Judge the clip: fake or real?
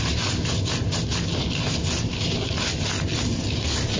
real